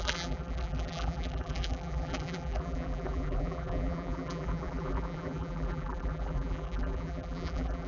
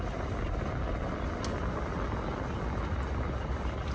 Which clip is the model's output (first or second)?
first